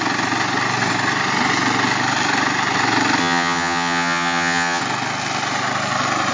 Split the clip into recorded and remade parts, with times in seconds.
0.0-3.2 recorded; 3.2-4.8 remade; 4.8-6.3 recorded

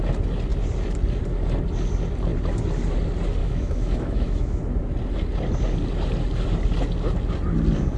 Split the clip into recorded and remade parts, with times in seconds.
0.0-3.4 recorded; 3.4-4.6 remade; 4.6-8.0 recorded

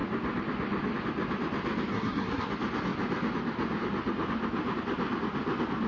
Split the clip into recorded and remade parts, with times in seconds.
0.0-1.9 recorded; 1.9-2.5 remade; 2.5-5.9 recorded

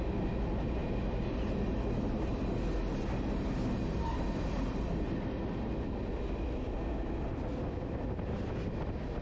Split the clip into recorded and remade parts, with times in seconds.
0.0-9.2 recorded

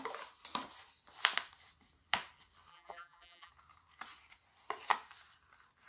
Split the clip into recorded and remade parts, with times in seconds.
0.0-2.7 recorded; 2.7-3.5 remade; 3.5-5.9 recorded

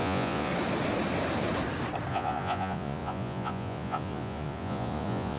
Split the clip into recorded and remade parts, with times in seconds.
0.0-0.5 remade; 0.5-2.1 recorded; 2.1-5.4 remade

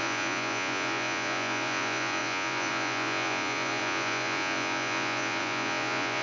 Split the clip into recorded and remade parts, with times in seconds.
0.0-6.2 remade

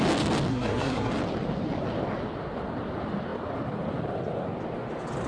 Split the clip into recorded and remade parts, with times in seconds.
0.0-0.5 recorded; 0.5-1.1 remade; 1.1-5.3 recorded